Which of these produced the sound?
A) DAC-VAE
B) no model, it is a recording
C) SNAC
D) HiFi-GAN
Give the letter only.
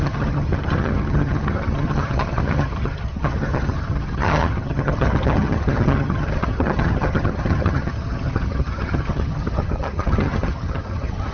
D